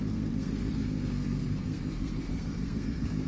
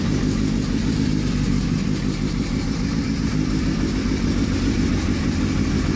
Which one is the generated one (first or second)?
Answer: first